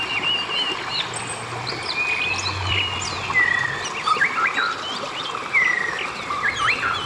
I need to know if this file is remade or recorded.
recorded